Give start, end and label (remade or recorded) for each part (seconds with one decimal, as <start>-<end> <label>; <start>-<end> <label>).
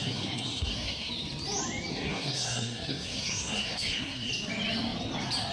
0.0-1.1 remade; 1.1-1.9 recorded; 1.9-4.3 remade; 4.3-5.5 recorded